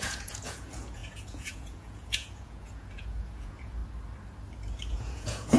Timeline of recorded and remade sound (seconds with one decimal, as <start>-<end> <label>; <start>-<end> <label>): 0.0-3.8 remade; 3.8-4.9 recorded; 4.9-5.6 remade